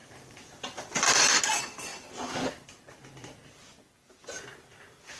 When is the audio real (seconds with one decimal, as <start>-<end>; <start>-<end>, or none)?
1.4-1.9; 2.5-5.2